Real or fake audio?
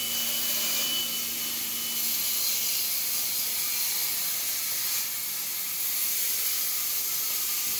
real